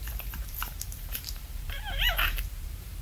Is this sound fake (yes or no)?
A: yes